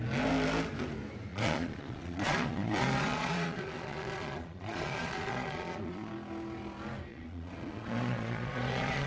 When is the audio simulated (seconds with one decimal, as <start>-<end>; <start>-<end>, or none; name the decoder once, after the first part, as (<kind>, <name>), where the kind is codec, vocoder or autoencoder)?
1.3-6.1 (vocoder, Vocos); 7.1-9.1